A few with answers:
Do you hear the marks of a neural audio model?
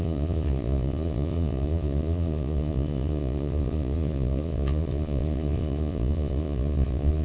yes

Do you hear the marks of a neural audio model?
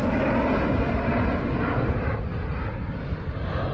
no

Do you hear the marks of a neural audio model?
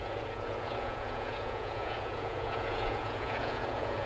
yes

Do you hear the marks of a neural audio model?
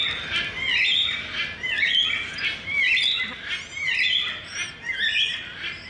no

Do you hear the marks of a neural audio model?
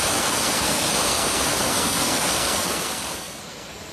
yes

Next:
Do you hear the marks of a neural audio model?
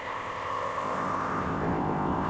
yes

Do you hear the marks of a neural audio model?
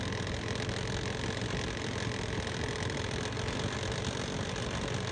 no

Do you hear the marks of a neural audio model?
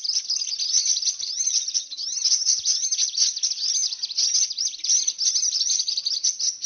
no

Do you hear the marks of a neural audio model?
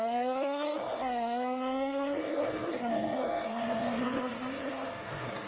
yes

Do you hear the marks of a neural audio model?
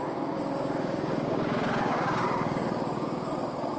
yes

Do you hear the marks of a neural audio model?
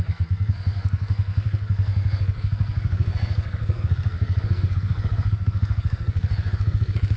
yes